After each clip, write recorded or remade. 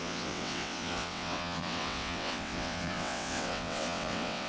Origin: remade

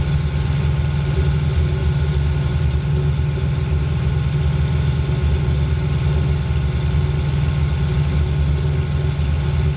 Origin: recorded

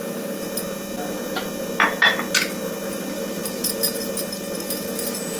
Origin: recorded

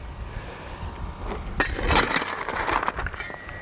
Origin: recorded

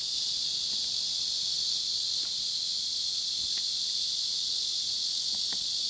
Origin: recorded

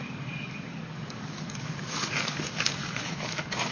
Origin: remade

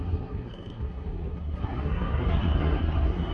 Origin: remade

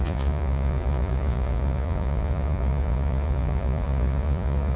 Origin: remade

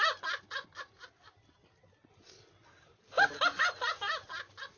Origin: recorded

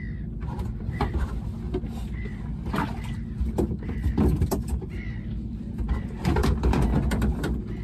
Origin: recorded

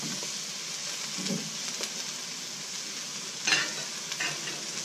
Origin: recorded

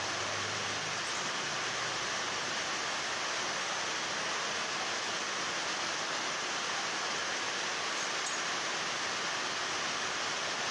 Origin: recorded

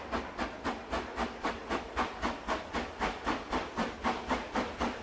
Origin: recorded